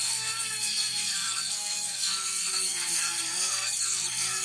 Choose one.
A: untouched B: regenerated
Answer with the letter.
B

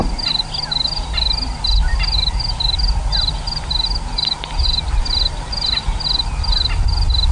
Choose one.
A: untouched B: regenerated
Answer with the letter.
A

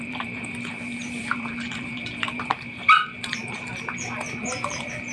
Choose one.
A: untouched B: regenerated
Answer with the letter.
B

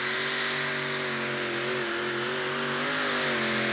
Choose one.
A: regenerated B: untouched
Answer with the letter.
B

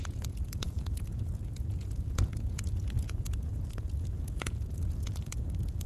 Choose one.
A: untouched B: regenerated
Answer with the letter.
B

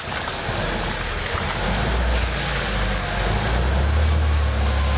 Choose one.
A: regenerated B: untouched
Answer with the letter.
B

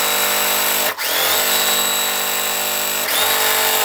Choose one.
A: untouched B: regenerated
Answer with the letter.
A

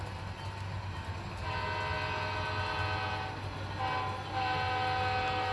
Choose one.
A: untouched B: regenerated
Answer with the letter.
A